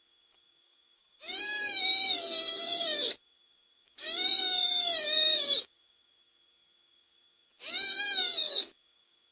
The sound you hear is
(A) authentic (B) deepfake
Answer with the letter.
B